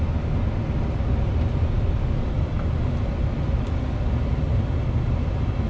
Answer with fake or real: real